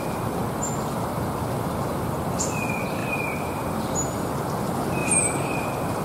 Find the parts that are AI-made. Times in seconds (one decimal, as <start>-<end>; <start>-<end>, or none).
3.0-4.3; 5.0-6.0